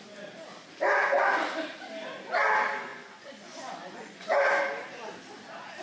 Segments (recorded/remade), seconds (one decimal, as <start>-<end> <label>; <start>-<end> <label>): 0.0-2.9 recorded; 2.9-4.6 remade; 4.6-5.8 recorded